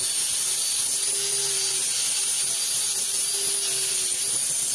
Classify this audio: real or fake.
real